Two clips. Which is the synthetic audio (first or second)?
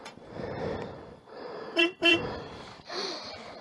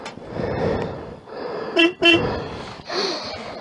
first